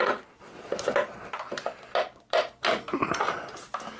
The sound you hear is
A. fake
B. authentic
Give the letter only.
B